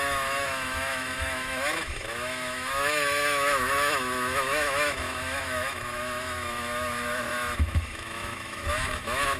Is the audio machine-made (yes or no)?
yes